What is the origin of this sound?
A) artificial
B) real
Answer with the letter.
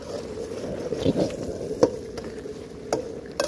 B